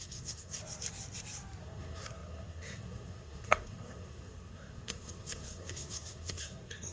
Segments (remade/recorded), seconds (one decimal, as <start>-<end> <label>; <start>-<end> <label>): 0.0-0.6 remade; 0.6-1.6 recorded; 1.6-6.9 remade